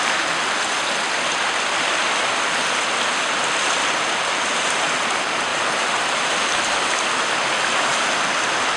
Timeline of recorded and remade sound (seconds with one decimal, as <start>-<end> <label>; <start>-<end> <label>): 0.0-5.5 recorded; 5.5-6.3 remade; 6.3-8.8 recorded